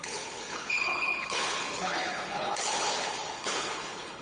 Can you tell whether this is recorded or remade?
remade